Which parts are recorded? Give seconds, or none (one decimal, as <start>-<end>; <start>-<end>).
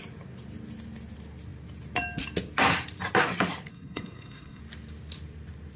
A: 0.0-3.7; 4.6-5.8